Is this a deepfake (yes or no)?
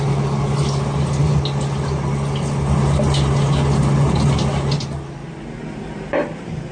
no